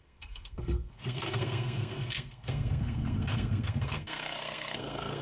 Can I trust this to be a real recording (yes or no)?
no